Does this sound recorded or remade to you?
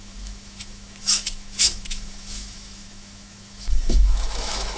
remade